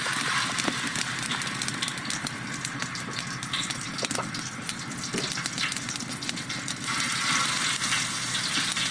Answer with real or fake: real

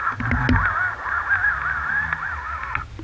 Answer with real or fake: real